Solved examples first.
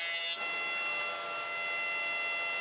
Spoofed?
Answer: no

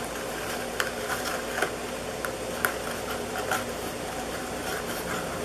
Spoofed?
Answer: yes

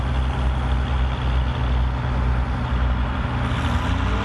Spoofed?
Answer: no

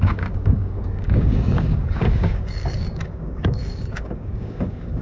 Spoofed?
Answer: yes